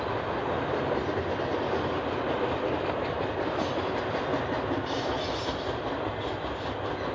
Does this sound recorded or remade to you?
recorded